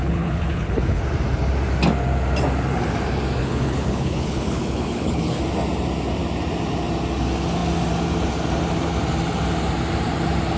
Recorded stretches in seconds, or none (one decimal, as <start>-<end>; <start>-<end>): 1.0-3.4; 5.4-10.6